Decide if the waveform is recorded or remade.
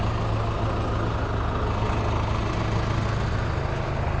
recorded